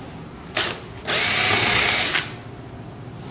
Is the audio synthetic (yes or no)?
no